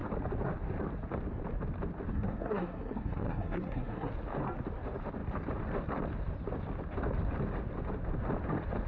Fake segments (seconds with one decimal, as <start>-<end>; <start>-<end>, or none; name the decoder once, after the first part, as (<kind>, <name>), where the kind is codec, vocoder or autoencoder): 2.1-4.1 (codec, SNAC)